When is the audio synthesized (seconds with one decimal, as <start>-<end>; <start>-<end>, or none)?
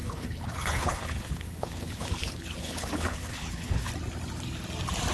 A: 0.0-2.1; 2.6-3.9